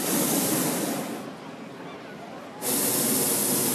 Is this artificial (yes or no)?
no